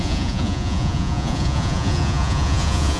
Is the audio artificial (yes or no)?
yes